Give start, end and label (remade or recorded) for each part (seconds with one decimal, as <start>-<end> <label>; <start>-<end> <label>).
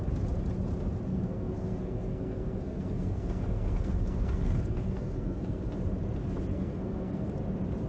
0.0-1.1 recorded; 1.1-5.6 remade; 5.6-6.5 recorded; 6.5-7.3 remade; 7.3-7.9 recorded